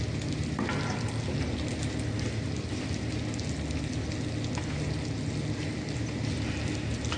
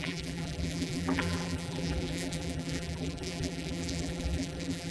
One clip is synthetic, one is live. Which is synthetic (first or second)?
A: second